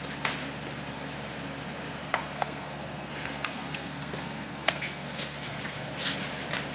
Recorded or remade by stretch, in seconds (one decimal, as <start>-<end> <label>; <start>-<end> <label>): 0.0-2.0 recorded; 2.0-5.9 remade; 5.9-6.7 recorded

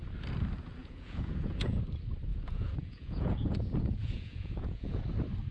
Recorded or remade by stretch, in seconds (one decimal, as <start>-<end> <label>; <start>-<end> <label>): 0.0-0.8 recorded; 0.8-1.8 remade; 1.8-2.3 recorded; 2.3-5.0 remade; 5.0-5.5 recorded

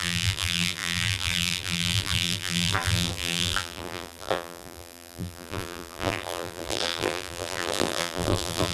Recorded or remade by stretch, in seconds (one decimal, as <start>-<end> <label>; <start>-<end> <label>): 0.0-8.7 remade

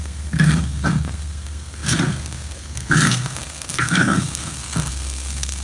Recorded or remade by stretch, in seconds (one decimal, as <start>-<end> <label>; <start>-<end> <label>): 0.0-5.6 remade

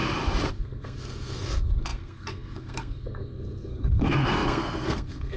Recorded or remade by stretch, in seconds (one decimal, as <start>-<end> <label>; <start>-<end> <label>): 0.0-0.5 recorded; 0.5-5.4 remade

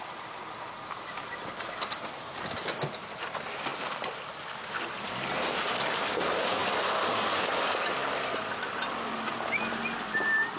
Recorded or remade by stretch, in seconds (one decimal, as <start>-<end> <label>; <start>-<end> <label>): 0.0-10.6 recorded